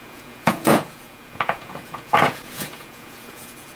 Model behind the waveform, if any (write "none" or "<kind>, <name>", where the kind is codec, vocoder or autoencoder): vocoder, Vocos